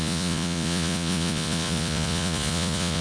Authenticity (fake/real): fake